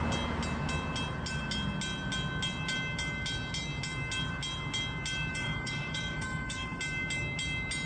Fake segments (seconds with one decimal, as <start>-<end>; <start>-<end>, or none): 5.3-6.8